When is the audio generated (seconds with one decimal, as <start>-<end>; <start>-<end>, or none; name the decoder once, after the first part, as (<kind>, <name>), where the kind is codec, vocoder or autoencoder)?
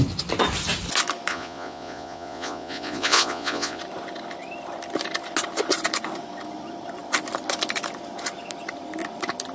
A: 1.3-3.8 (vocoder, Vocos)